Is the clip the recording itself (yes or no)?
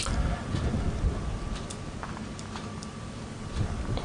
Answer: no